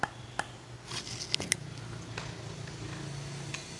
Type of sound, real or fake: real